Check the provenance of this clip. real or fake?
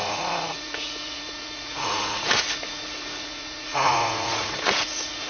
fake